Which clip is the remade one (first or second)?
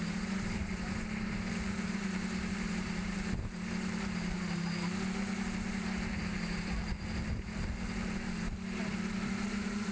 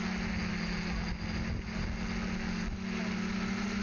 first